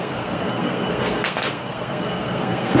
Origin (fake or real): fake